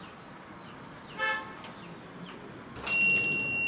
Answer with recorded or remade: recorded